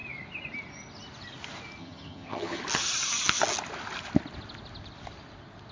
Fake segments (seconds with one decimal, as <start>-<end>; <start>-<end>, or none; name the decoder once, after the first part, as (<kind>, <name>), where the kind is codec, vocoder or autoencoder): 1.8-2.6 (vocoder, HiFi-GAN)